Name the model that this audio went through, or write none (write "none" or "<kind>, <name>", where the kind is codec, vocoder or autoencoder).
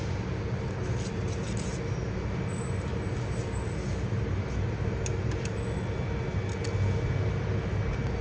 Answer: none